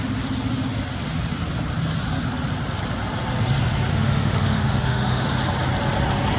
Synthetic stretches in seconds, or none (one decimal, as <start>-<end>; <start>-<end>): 3.9-5.3